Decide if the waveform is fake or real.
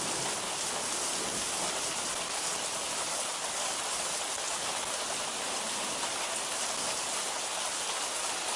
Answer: real